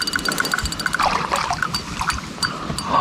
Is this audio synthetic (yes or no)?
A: no